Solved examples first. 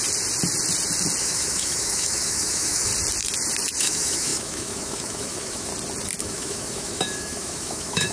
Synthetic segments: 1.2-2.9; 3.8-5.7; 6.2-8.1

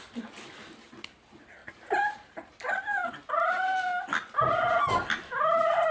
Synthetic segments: 1.6-3.1

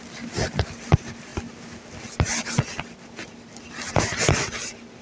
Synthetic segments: none

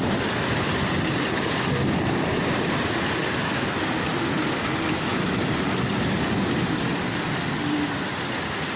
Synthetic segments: none

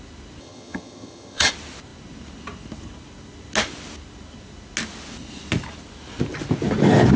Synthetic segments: 0.4-1.5

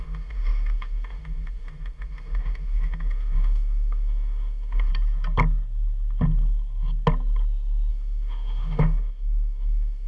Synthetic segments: 0.0-4.9; 7.9-10.1

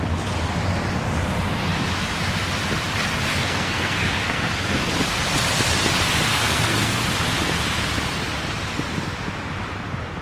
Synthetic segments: 3.3-4.9; 6.3-7.0

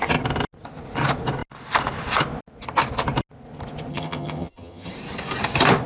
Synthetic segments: 3.9-4.9